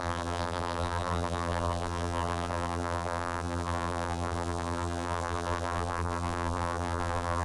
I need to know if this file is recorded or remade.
remade